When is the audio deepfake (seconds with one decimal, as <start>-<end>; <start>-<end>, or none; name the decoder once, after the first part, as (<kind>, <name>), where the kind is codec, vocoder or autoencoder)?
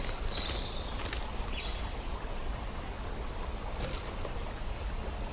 none